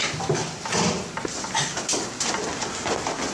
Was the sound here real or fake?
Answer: real